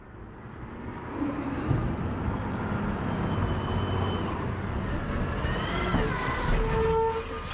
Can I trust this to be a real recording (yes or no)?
yes